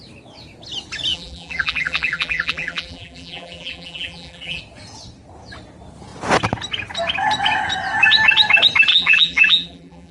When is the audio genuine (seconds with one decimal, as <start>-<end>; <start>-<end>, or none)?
0.0-1.1; 4.6-8.9